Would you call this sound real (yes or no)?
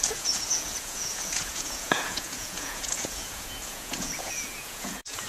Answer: no